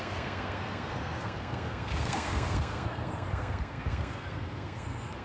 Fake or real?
fake